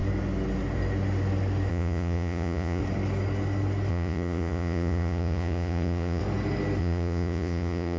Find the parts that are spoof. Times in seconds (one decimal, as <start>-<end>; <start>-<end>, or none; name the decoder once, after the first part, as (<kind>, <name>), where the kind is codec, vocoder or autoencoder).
1.7-2.8 (vocoder, Vocos); 3.9-6.2; 6.8-8.0